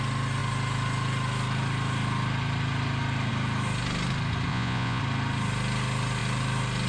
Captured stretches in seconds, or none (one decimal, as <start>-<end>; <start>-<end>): 0.0-4.5; 5.0-6.9